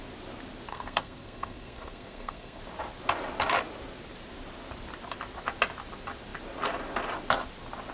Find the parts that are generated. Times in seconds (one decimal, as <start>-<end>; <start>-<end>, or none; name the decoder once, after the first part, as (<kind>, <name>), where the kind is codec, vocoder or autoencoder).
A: 0.7-2.6 (codec, SNAC)